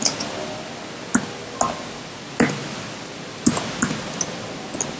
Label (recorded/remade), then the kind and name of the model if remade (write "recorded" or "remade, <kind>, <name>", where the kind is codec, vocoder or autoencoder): recorded